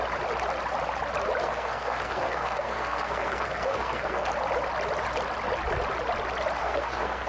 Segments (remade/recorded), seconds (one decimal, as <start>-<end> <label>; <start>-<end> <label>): 0.0-1.4 recorded; 1.4-4.3 remade; 4.3-6.6 recorded; 6.6-7.3 remade